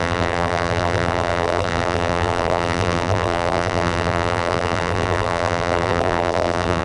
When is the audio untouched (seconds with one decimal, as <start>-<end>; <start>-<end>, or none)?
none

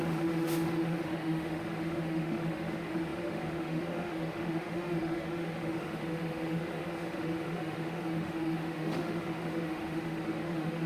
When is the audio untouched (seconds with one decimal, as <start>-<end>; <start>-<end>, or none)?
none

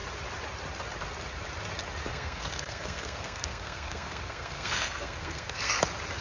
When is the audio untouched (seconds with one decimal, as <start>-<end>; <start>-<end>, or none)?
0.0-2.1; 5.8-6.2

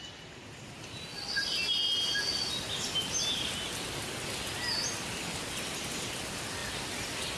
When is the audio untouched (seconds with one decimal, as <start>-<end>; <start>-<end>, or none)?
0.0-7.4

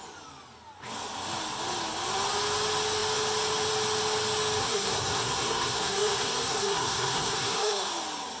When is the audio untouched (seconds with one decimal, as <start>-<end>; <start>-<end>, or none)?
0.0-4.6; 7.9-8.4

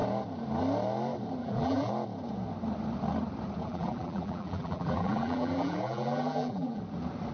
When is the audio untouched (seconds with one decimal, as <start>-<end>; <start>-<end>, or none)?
0.0-1.4; 1.9-3.6; 6.8-7.3

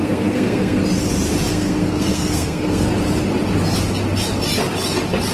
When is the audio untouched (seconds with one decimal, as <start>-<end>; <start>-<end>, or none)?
0.8-1.5; 2.9-5.3

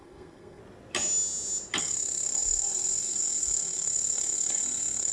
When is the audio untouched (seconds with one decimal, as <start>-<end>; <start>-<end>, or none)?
0.6-1.8